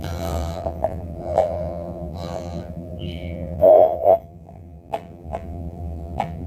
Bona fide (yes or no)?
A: no